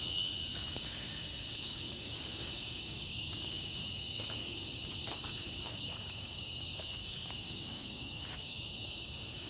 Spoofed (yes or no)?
yes